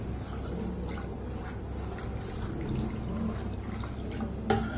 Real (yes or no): yes